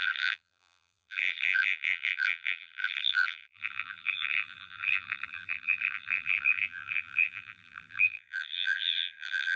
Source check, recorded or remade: remade